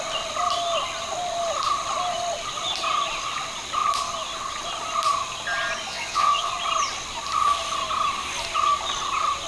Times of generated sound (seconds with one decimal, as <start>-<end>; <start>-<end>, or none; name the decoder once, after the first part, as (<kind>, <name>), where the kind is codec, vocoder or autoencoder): 5.9-6.5 (vocoder, WaveNeXt)